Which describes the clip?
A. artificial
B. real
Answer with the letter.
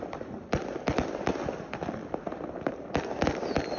A